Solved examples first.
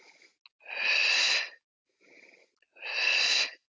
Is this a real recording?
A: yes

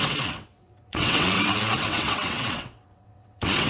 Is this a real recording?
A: no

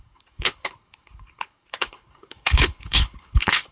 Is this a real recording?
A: no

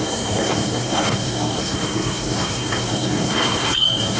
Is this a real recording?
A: no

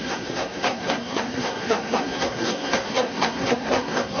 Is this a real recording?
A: no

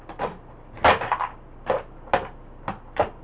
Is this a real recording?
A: yes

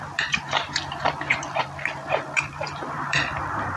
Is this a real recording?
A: no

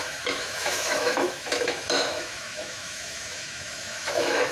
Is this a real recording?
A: no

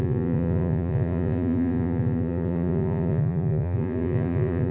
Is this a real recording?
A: no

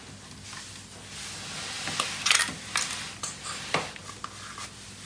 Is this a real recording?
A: yes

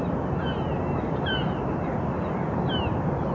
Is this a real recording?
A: yes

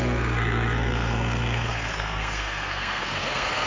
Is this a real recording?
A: no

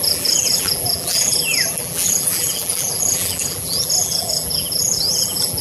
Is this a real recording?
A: no